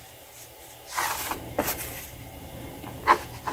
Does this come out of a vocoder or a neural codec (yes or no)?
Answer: no